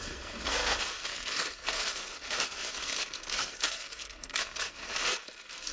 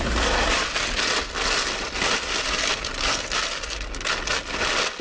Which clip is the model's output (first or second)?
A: first